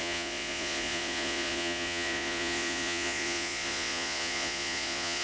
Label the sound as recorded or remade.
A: remade